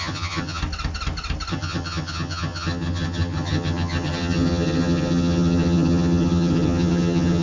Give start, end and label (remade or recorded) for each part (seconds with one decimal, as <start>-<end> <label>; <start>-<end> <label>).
0.0-0.6 remade; 0.6-1.5 recorded; 1.5-7.4 remade